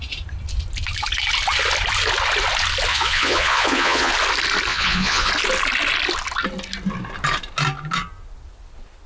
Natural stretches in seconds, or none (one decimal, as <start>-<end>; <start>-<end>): 0.0-2.9; 4.1-4.7; 5.3-9.1